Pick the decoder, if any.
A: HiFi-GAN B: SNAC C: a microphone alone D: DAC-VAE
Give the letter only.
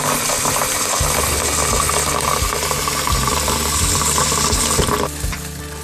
C